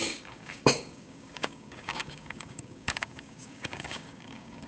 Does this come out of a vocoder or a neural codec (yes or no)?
yes